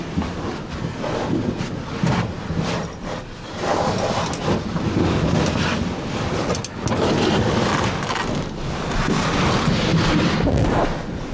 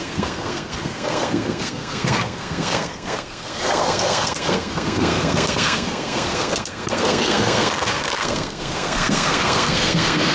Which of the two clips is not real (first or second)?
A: second